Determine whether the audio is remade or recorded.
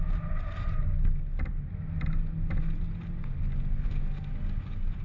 recorded